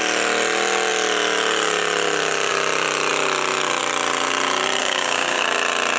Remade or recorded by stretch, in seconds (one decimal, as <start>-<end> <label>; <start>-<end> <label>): 0.0-4.8 recorded; 4.8-5.4 remade; 5.4-6.0 recorded